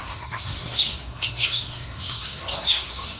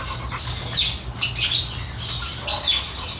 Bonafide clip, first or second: second